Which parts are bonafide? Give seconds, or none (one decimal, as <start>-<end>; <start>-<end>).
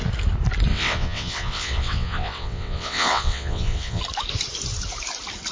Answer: 0.0-0.7; 4.0-5.5